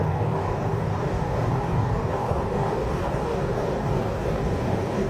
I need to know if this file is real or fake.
fake